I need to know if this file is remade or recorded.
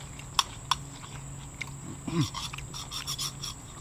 recorded